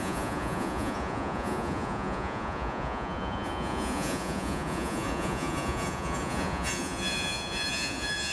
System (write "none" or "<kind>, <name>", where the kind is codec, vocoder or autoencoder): vocoder, Vocos